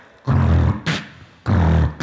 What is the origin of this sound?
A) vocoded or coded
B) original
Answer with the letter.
B